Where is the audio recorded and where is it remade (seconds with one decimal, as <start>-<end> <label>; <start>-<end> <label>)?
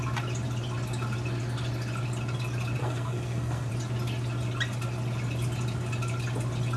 0.0-2.8 recorded; 2.8-3.7 remade; 3.7-6.8 recorded